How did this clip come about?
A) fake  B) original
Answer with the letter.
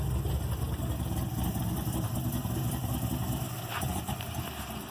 B